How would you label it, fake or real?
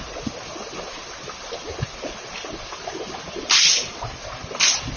real